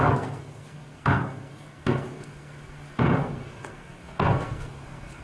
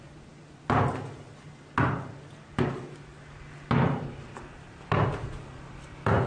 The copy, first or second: first